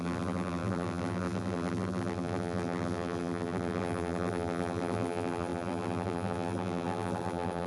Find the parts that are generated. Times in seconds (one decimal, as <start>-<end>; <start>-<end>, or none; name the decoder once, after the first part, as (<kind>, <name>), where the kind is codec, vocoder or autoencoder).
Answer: 0.0-7.7 (vocoder, BigVGAN v2)

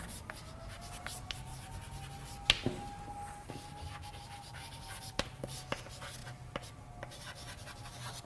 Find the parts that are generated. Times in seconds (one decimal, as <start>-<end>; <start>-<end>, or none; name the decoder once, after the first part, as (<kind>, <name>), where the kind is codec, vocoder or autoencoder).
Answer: none

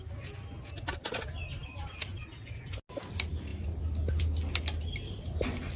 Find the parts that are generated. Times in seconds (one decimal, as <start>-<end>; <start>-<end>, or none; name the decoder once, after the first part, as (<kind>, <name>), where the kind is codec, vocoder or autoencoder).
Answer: none

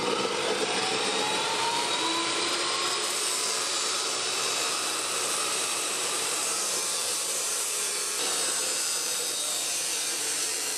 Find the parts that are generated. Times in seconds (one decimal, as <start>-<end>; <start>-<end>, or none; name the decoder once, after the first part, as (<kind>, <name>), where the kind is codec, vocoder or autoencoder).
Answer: 0.0-10.8 (vocoder, BigVGAN v2)